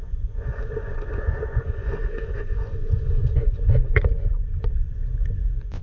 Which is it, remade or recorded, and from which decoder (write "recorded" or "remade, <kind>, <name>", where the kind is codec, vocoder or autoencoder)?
remade, vocoder, Vocos